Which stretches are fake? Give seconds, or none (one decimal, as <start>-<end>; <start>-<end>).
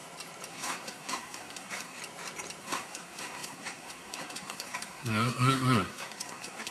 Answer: 0.5-2.0; 2.6-6.7